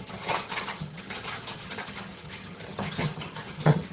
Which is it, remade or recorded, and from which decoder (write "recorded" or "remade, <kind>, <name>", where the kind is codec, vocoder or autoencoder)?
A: remade, vocoder, HiFi-GAN